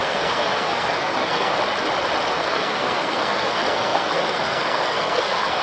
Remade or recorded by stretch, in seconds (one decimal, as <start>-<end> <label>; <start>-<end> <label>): 0.0-1.5 remade; 1.5-2.3 recorded; 2.3-5.6 remade